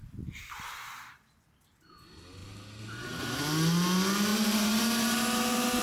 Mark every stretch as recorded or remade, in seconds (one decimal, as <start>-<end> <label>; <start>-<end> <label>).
0.0-2.4 recorded; 2.4-3.4 remade; 3.4-4.3 recorded; 4.3-4.8 remade; 4.8-5.8 recorded